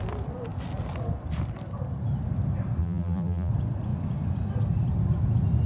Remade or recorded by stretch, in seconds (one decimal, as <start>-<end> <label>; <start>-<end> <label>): 0.0-2.8 recorded; 2.8-3.5 remade; 3.5-5.7 recorded